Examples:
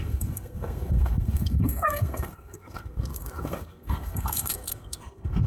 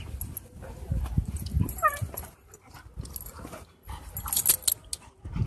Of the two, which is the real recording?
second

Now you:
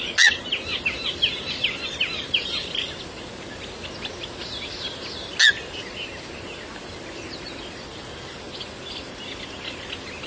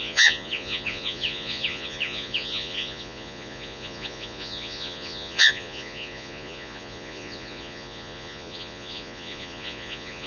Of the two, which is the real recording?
first